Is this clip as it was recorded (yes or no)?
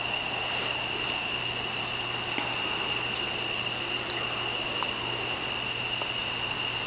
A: yes